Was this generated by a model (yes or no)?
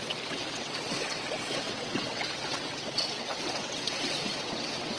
yes